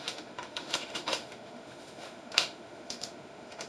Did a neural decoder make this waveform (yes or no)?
yes